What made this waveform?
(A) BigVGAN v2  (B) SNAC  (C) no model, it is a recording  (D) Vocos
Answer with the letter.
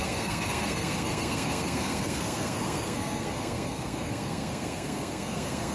B